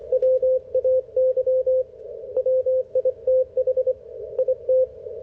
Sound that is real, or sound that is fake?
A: real